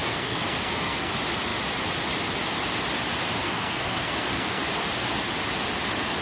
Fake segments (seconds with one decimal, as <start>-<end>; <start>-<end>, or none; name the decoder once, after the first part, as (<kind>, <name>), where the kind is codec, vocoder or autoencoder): 0.0-1.1 (codec, SNAC); 3.4-4.7